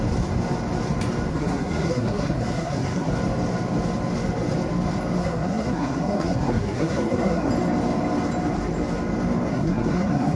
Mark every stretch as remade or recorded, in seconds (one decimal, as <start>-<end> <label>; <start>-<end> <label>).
0.0-1.3 recorded; 1.3-3.1 remade; 3.1-5.2 recorded; 5.2-7.5 remade; 7.5-9.5 recorded; 9.5-10.4 remade